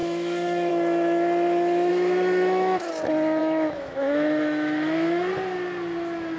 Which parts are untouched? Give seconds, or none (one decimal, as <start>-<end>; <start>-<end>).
0.7-1.9; 2.9-3.4; 5.3-6.4